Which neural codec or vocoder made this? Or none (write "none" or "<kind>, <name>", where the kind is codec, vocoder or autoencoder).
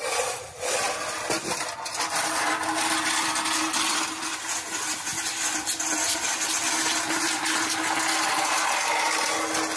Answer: none